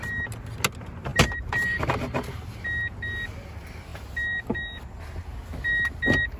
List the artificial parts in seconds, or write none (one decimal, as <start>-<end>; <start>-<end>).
1.1-1.8